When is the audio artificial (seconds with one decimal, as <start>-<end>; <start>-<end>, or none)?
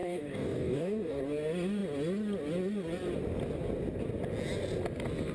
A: 0.0-1.2